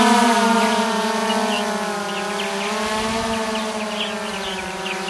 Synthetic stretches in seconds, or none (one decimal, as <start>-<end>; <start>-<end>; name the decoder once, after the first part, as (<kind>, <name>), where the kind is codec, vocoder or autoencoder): 0.0-1.2 (vocoder, BigVGAN v2); 4.3-5.1